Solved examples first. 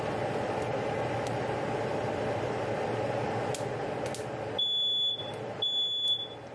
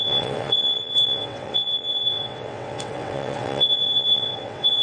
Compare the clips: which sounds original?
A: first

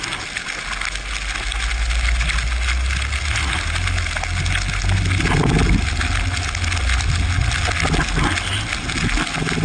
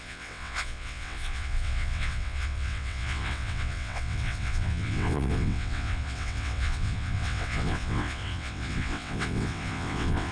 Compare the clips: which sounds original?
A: first